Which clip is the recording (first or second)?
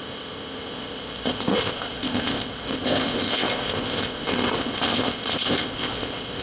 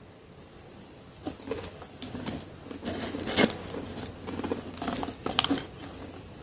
second